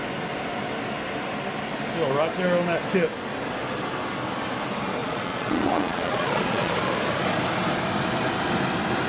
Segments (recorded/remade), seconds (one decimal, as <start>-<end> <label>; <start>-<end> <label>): 0.0-5.0 recorded; 5.0-6.7 remade; 6.7-9.1 recorded